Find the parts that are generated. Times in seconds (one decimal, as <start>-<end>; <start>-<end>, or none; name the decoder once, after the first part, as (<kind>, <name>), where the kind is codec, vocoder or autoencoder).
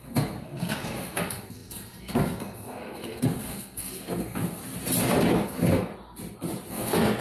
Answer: 0.0-4.6 (codec, SNAC); 5.3-5.9; 6.7-7.2